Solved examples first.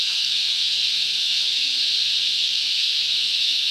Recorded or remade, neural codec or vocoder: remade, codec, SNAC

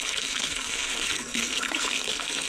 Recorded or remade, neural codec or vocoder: remade, codec, SNAC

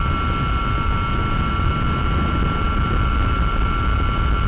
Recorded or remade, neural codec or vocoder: recorded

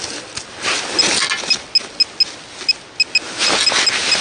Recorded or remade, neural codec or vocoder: recorded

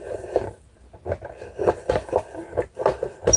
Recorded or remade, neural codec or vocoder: recorded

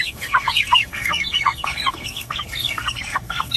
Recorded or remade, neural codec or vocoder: remade, codec, SNAC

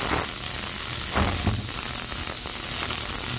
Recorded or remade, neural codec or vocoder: recorded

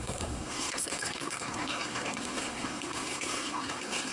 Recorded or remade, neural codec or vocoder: remade, codec, SNAC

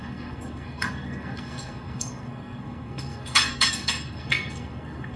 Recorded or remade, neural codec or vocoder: remade, codec, SNAC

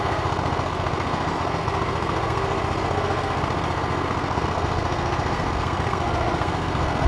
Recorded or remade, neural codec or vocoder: remade, codec, SNAC